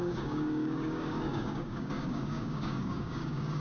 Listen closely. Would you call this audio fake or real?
fake